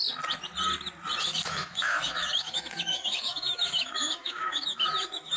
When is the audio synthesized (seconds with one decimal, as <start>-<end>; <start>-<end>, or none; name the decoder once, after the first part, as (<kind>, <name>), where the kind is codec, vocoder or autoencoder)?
1.2-5.4 (autoencoder, DAC-VAE)